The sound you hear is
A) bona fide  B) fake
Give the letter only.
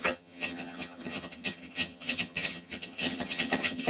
B